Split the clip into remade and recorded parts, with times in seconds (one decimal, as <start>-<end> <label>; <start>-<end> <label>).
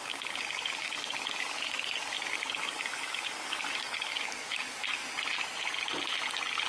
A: 0.0-5.0 remade; 5.0-6.7 recorded